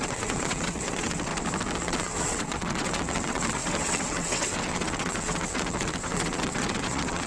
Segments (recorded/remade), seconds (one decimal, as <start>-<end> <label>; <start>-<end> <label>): 0.0-1.3 remade; 1.3-1.8 recorded; 1.8-7.3 remade

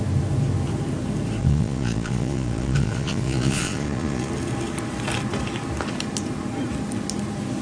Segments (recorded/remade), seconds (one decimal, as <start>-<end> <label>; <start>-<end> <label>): 0.0-1.4 recorded; 1.4-4.3 remade; 4.3-7.6 recorded